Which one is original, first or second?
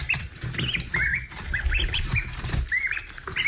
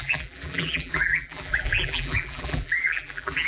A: first